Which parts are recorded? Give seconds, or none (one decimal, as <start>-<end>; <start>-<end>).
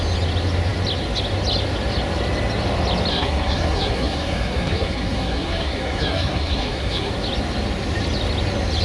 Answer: 0.0-3.1; 7.1-8.8